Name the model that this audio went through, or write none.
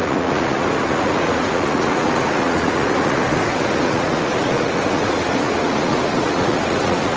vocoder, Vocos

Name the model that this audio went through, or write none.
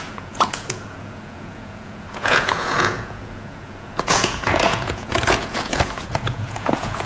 vocoder, Vocos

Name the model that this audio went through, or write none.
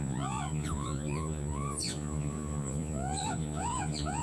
vocoder, Vocos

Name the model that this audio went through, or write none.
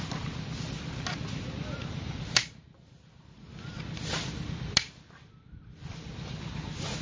none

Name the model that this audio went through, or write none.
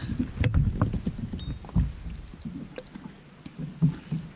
none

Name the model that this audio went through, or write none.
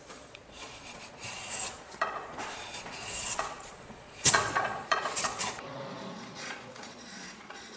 vocoder, Vocos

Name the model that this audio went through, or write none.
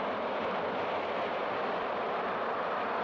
none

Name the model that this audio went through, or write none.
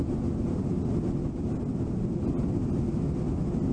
none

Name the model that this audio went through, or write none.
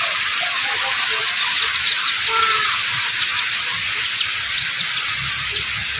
none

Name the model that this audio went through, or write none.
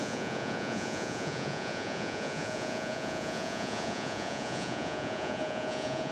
vocoder, Vocos